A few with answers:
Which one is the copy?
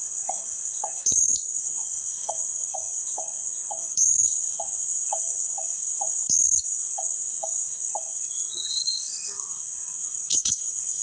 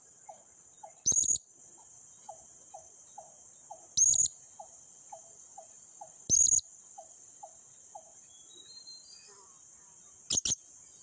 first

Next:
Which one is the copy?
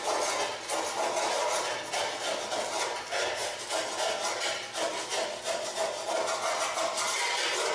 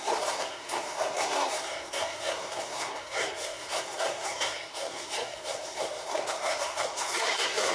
second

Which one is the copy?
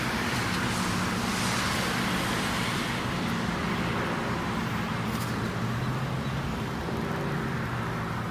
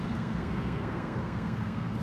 second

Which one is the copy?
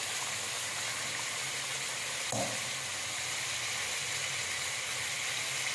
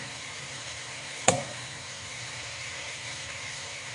second